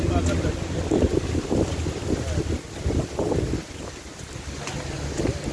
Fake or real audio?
real